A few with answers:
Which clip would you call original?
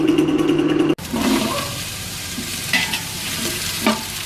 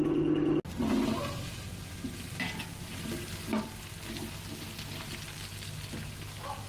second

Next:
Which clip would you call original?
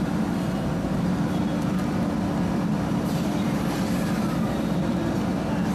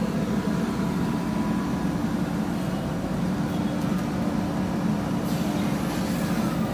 second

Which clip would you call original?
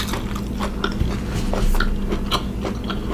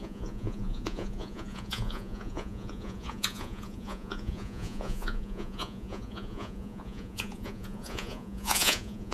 first